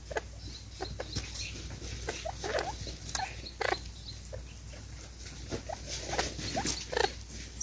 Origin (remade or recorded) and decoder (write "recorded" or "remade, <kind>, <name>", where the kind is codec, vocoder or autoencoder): recorded